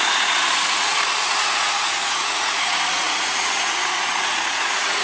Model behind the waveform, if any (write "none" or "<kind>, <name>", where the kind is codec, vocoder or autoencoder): vocoder, Vocos